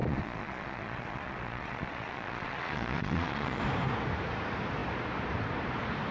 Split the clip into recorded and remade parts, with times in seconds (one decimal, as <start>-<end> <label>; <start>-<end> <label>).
0.0-3.6 remade; 3.6-6.1 recorded